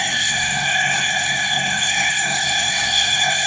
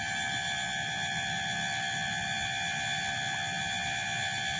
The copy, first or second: first